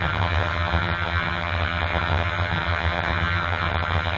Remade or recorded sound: remade